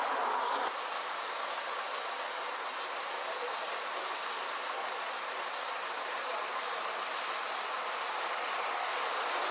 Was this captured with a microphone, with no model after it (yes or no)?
yes